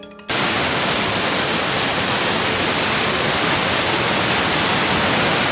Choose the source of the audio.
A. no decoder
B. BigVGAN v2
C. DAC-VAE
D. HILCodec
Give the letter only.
A